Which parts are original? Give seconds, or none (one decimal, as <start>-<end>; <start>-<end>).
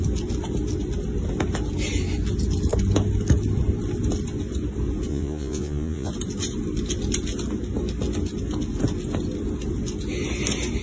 0.0-5.1; 6.1-10.8